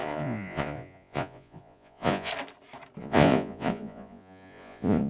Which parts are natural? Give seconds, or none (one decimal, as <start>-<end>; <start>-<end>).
2.3-3.0